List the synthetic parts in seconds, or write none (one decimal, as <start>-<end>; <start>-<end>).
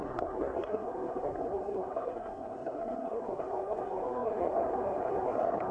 0.0-5.7